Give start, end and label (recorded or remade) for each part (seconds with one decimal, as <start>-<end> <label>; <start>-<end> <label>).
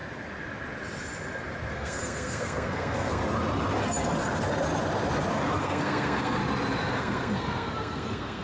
0.0-1.7 recorded; 1.7-3.2 remade; 3.2-5.6 recorded; 5.6-6.4 remade; 6.4-6.9 recorded; 6.9-8.4 remade